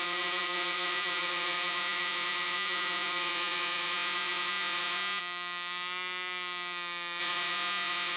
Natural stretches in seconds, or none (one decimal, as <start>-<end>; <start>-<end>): 5.2-7.2